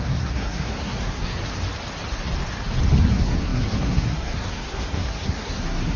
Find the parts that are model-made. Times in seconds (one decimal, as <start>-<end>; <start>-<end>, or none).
0.0-1.4; 3.1-6.0